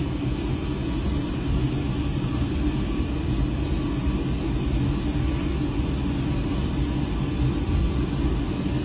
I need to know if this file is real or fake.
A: real